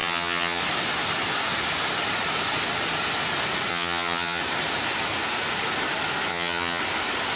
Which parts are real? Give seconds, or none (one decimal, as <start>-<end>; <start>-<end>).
0.6-3.7; 4.4-6.3; 6.8-7.4